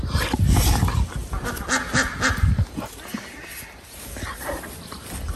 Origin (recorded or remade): recorded